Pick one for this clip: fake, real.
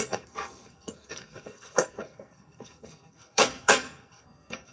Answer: fake